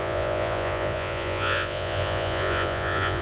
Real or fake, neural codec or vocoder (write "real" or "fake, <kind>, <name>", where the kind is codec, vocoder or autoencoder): fake, vocoder, Vocos